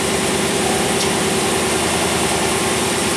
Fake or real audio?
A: fake